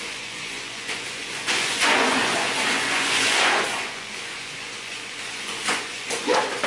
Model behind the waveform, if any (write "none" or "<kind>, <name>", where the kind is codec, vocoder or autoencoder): vocoder, Vocos